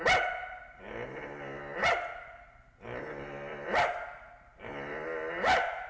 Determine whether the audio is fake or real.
real